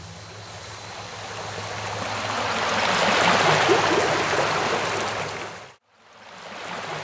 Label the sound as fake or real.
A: real